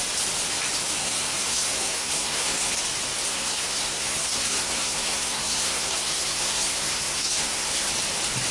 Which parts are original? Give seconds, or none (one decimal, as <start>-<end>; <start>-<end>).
0.0-1.0; 2.7-3.3; 7.9-8.5